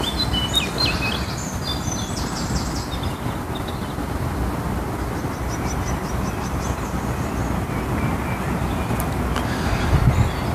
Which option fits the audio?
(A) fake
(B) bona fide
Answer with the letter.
B